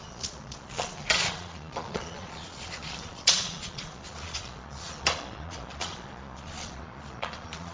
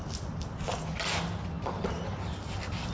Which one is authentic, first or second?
second